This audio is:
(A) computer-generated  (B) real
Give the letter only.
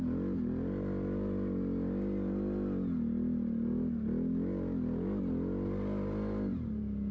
B